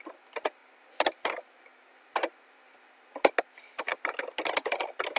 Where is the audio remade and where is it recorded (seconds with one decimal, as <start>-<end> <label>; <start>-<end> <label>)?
0.0-0.6 recorded; 0.6-2.8 remade; 2.8-5.2 recorded